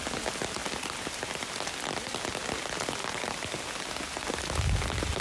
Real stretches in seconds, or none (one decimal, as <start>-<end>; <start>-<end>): 0.0-5.2